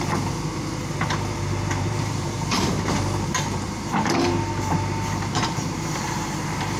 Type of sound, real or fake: fake